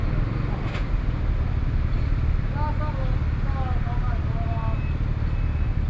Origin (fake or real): real